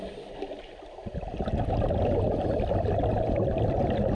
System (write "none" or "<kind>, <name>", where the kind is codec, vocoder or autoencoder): none